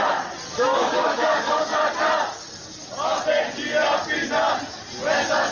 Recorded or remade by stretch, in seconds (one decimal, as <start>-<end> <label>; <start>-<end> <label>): 0.0-0.5 recorded; 0.5-1.6 remade; 1.6-2.4 recorded; 2.4-3.2 remade; 3.2-5.5 recorded